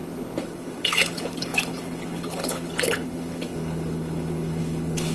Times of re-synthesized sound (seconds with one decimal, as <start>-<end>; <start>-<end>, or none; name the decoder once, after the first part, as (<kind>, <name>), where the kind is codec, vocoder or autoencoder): 0.0-5.1 (codec, HILCodec)

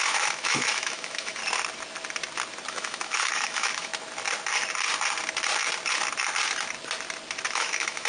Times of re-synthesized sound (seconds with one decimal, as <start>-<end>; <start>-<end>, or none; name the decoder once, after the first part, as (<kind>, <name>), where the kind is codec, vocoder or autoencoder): 0.0-1.4 (autoencoder, DAC-VAE); 2.7-3.9; 7.5-8.1

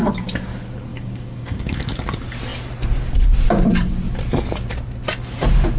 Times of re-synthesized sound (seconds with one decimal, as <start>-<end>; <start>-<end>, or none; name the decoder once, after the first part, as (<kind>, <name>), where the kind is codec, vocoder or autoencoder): 0.9-1.8 (codec, DAC)

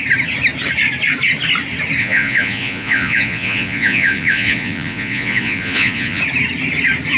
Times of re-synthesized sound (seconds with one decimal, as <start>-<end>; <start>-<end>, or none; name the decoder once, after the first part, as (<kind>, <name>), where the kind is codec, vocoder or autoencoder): 2.0-6.2 (vocoder, Vocos)

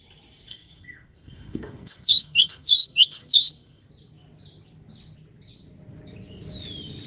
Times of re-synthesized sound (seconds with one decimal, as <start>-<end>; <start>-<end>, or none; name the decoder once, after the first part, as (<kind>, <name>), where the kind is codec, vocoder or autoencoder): 0.5-3.9 (codec, SNAC)

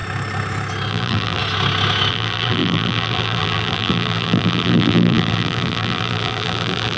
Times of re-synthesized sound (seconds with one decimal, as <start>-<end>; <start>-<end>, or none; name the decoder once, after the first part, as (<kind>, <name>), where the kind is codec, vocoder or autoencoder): 0.9-1.4 (vocoder, BigVGAN v2); 2.1-7.0